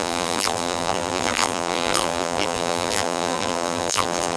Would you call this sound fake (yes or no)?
yes